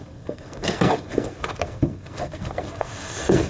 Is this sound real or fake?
fake